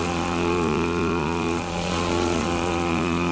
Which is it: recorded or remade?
remade